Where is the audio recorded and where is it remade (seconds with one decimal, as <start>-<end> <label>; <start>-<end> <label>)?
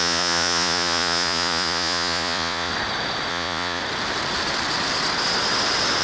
0.0-2.7 remade; 2.7-3.3 recorded; 3.3-3.8 remade; 3.8-6.0 recorded